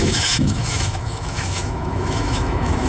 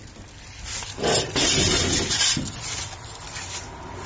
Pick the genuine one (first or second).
second